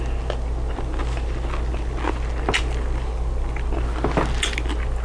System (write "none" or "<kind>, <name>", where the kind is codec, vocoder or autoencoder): none